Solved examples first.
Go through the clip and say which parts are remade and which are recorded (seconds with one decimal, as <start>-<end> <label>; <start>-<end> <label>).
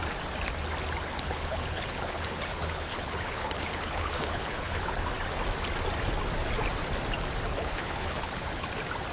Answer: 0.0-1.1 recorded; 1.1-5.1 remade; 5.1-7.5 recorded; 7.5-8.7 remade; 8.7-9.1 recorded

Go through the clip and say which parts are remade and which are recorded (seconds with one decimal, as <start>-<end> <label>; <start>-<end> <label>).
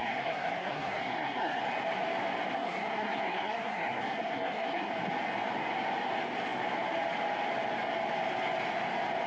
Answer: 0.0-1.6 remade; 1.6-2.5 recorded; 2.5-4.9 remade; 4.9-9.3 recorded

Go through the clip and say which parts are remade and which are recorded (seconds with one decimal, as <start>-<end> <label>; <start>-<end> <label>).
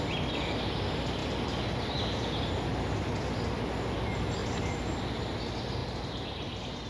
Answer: 0.0-1.2 recorded; 1.2-2.5 remade; 2.5-4.4 recorded; 4.4-5.0 remade; 5.0-5.8 recorded; 5.8-6.9 remade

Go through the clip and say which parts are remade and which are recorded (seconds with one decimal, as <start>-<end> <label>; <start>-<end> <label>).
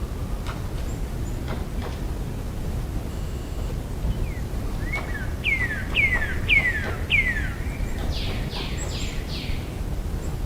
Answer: 0.0-3.1 recorded; 3.1-3.7 remade; 3.7-10.5 recorded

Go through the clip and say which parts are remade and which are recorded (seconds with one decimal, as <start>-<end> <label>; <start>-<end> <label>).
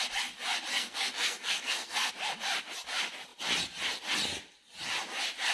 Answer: 0.0-0.7 recorded; 0.7-2.1 remade; 2.1-5.5 recorded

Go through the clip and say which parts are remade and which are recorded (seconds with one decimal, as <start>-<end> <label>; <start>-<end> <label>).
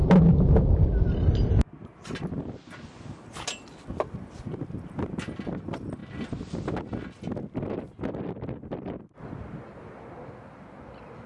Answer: 0.0-11.3 recorded